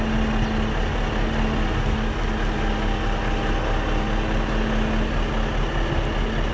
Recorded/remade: recorded